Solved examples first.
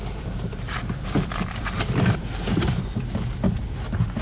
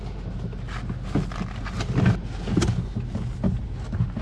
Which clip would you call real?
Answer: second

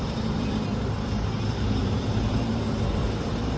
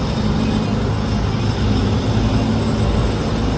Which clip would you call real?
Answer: second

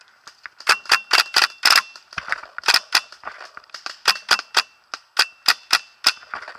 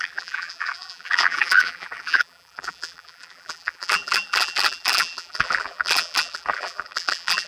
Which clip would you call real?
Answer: first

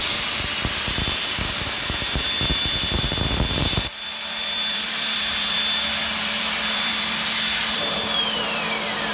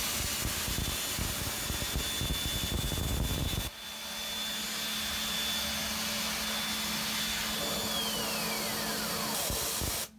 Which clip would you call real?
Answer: second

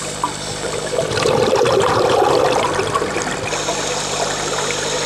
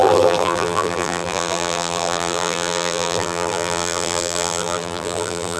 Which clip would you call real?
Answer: first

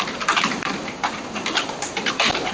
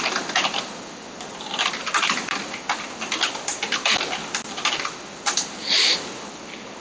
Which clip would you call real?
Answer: second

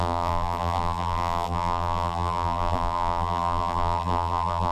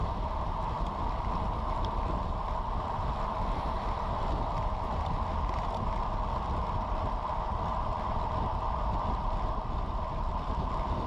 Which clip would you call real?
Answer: second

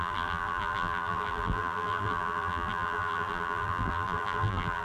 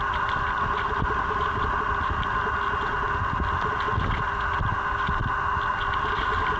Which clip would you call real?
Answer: second